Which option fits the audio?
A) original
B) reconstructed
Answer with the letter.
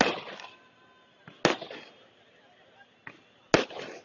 A